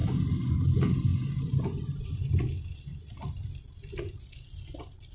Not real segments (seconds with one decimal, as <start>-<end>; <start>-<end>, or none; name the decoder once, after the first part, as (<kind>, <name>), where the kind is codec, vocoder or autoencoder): none